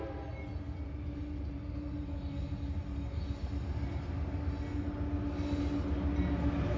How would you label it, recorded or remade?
recorded